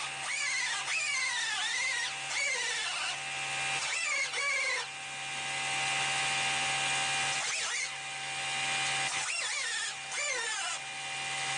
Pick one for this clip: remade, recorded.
recorded